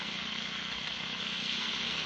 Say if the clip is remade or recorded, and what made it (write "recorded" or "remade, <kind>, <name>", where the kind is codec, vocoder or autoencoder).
remade, codec, SNAC